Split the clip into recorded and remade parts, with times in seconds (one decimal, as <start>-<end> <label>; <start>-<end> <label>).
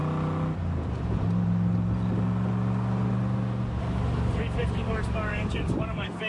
0.0-3.8 recorded; 3.8-6.3 remade